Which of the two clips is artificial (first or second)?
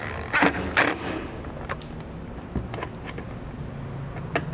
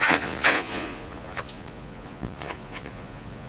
second